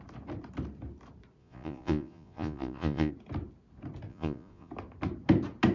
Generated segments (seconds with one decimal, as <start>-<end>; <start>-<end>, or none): 1.4-3.1; 4.1-4.7